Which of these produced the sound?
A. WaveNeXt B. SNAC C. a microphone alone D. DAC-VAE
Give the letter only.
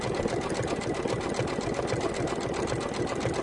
C